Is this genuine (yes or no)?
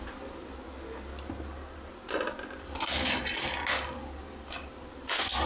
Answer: yes